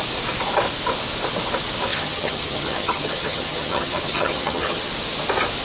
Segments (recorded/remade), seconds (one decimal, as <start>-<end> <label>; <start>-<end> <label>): 0.0-1.9 recorded; 1.9-4.9 remade; 4.9-5.6 recorded